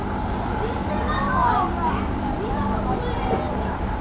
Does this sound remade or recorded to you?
recorded